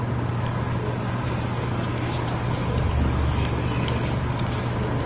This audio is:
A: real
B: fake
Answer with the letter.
A